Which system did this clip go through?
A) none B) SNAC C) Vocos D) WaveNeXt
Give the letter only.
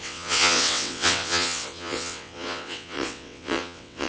D